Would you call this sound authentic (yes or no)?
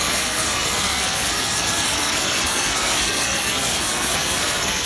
no